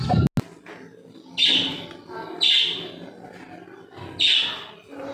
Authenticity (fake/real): real